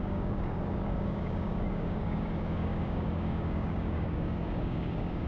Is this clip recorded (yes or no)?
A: no